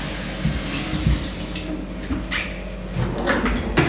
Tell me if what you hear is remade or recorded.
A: recorded